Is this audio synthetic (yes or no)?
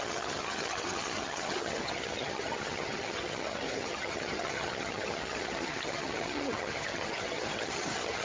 yes